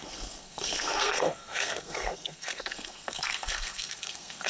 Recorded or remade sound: remade